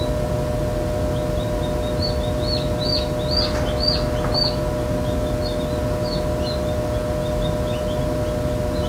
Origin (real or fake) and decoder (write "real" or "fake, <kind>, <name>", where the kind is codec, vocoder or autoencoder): real